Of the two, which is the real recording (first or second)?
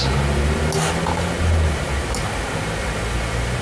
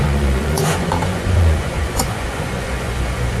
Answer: first